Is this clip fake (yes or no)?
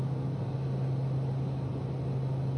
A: no